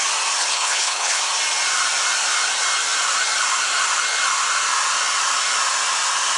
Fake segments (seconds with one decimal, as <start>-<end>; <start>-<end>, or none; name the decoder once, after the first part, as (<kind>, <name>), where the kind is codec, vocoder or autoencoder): 0.4-1.2 (codec, HILCodec)

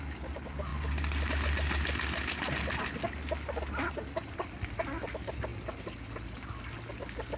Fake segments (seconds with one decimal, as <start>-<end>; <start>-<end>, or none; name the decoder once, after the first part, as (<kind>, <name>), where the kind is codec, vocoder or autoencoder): none

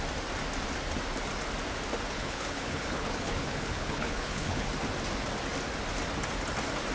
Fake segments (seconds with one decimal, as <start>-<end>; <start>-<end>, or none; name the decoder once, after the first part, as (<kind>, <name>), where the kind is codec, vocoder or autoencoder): 2.1-4.7 (codec, HILCodec)